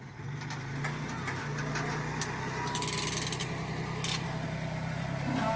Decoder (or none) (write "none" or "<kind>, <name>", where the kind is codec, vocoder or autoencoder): none